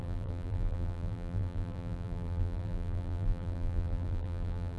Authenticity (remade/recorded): remade